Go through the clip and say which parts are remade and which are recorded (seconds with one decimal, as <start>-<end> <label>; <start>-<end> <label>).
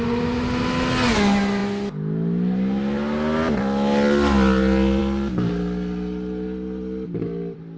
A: 0.0-7.8 recorded